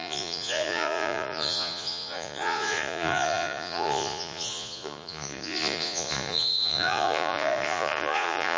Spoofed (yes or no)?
yes